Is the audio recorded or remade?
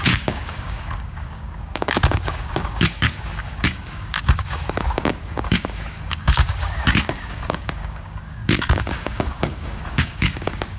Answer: remade